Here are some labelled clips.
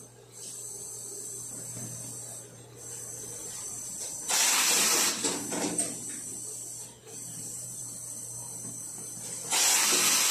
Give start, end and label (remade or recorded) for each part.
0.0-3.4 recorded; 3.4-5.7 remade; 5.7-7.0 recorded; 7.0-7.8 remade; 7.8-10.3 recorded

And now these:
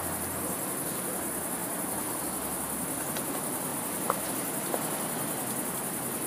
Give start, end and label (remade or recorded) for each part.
0.0-3.7 recorded; 3.7-4.3 remade; 4.3-6.3 recorded

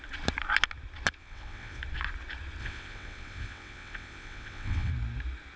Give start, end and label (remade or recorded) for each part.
0.0-1.2 recorded; 1.2-1.8 remade; 1.8-2.6 recorded; 2.6-4.9 remade; 4.9-5.6 recorded